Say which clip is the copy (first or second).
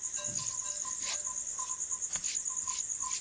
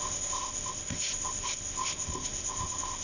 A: second